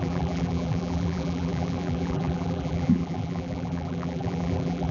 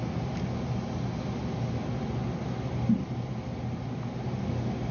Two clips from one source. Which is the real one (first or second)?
second